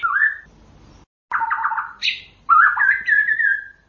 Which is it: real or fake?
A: real